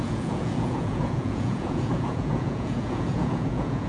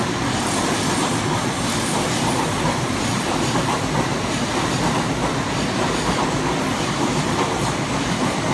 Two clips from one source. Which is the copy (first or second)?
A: first